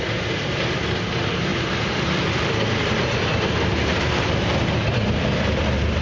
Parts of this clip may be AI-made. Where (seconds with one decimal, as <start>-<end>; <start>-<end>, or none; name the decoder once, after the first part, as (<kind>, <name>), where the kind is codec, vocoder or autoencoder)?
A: 1.5-4.1 (vocoder, BigVGAN v2)